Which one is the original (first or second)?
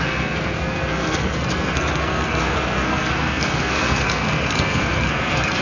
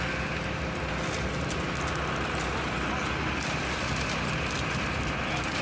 second